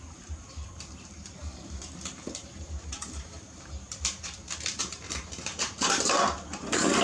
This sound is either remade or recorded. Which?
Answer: remade